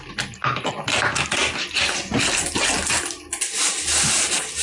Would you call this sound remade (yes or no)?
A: no